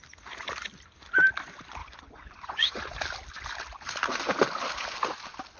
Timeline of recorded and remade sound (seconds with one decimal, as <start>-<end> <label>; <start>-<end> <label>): 0.0-1.8 recorded; 1.8-2.8 remade; 2.8-5.6 recorded